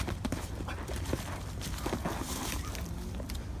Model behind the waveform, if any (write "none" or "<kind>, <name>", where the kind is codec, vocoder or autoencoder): vocoder, BigVGAN v2